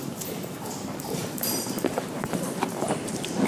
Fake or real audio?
fake